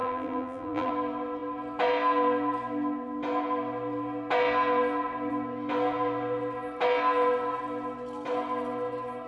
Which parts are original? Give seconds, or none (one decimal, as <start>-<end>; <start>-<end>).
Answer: 0.9-9.3